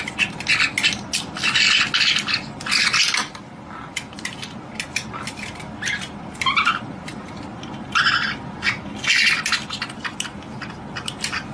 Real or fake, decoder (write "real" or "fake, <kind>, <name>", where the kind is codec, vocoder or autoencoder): real